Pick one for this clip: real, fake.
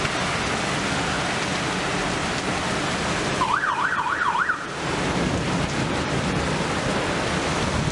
real